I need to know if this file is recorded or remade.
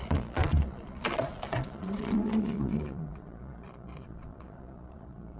remade